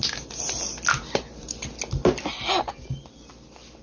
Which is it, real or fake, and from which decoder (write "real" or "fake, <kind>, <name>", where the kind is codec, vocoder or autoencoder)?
real